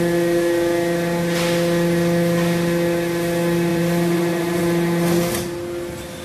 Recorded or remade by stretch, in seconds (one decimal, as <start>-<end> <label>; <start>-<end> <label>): 0.0-3.7 recorded; 3.7-4.6 remade; 4.6-6.2 recorded